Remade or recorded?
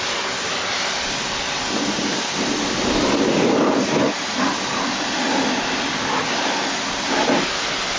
recorded